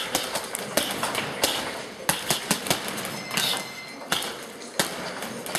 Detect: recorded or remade recorded